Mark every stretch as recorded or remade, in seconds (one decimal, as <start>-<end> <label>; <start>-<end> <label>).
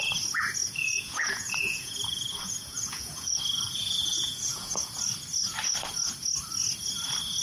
0.0-0.6 recorded; 0.6-3.4 remade; 3.4-4.0 recorded; 4.0-4.9 remade; 4.9-7.4 recorded